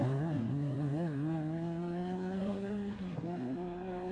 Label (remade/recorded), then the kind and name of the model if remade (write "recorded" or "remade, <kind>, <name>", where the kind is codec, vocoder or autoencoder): remade, codec, SNAC